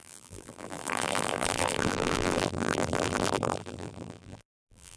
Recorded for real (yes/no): no